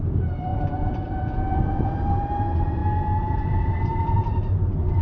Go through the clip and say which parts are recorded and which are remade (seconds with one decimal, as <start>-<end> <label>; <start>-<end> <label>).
0.0-0.5 recorded; 0.5-1.9 remade; 1.9-2.8 recorded; 2.8-3.8 remade; 3.8-5.0 recorded